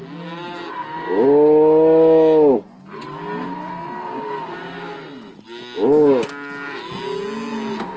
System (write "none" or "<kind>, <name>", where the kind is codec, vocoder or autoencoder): none